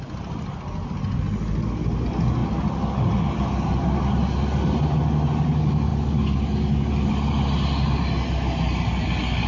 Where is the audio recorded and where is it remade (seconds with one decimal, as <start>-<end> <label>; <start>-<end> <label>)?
0.0-9.5 recorded